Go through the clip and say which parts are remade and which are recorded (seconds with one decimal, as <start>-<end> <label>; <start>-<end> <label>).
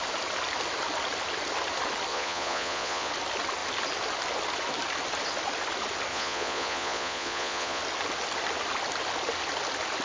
0.0-2.1 recorded; 2.1-3.1 remade; 3.1-6.1 recorded; 6.1-7.8 remade; 7.8-10.0 recorded